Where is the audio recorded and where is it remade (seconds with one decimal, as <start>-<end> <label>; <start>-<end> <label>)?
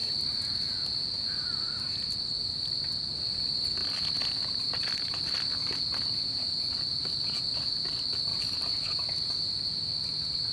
0.0-8.3 recorded; 8.3-9.6 remade; 9.6-10.5 recorded